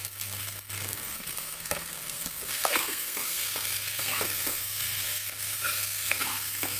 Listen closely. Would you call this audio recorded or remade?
remade